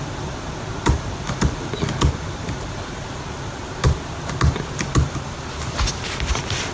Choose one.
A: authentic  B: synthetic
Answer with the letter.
A